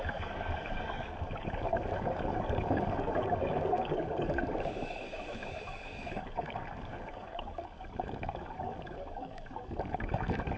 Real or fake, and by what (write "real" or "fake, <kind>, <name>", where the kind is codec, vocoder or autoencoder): fake, codec, DAC